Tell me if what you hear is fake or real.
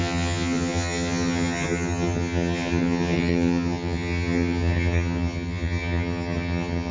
fake